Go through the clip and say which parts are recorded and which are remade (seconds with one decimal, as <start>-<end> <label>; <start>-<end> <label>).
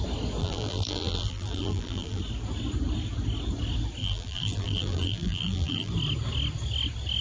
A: 0.0-0.4 recorded; 0.4-2.2 remade; 2.2-4.0 recorded; 4.0-5.9 remade; 5.9-7.2 recorded